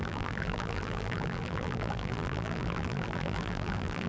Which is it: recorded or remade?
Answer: remade